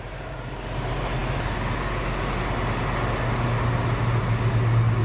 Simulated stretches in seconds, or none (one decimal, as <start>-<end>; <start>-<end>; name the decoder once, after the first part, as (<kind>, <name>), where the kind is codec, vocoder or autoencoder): none